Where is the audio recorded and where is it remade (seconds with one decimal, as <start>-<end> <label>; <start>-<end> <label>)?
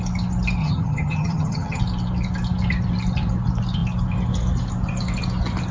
0.0-0.6 recorded; 0.6-1.8 remade; 1.8-5.7 recorded